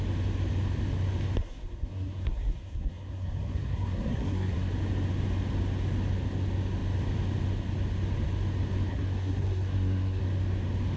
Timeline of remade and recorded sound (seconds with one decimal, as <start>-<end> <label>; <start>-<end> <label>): 0.0-1.4 recorded; 1.4-4.7 remade; 4.7-8.9 recorded; 8.9-10.2 remade; 10.2-11.0 recorded